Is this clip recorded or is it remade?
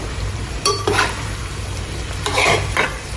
remade